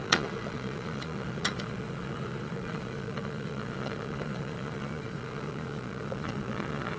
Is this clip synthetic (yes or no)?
yes